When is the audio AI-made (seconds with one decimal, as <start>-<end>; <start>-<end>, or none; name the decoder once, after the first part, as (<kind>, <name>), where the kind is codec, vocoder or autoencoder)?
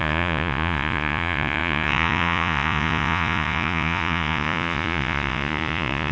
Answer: 0.0-6.1 (vocoder, Vocos)